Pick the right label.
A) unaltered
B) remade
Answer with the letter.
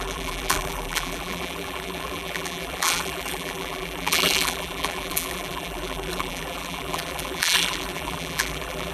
B